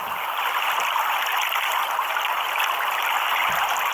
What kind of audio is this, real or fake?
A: real